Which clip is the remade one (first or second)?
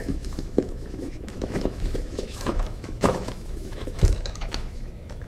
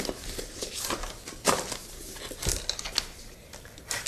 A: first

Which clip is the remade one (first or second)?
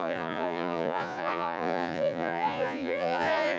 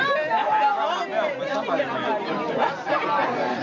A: first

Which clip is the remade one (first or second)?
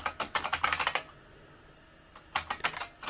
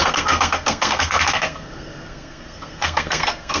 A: second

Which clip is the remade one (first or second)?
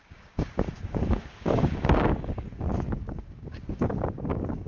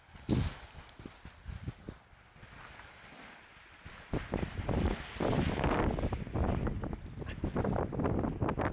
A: first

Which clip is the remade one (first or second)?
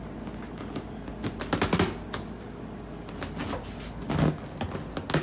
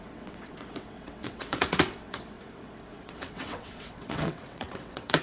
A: second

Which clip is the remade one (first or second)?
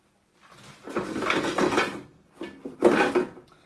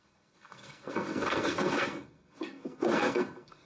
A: second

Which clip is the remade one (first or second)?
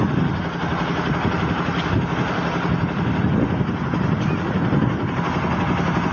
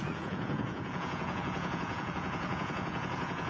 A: second